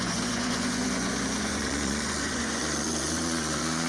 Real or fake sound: fake